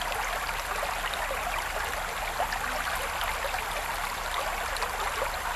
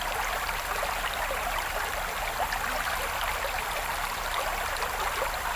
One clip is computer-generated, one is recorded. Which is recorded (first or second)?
first